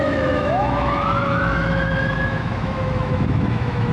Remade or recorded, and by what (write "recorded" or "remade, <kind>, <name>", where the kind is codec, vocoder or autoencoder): remade, autoencoder, DAC-VAE